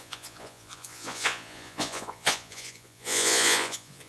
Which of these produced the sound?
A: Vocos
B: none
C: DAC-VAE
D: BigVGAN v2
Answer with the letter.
A